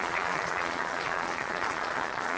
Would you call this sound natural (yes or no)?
no